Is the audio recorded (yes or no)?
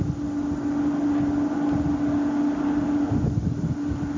no